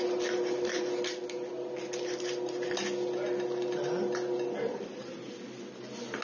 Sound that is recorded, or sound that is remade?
recorded